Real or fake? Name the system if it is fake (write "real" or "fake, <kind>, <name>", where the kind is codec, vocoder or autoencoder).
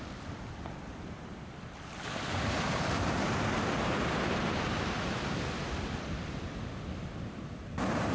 real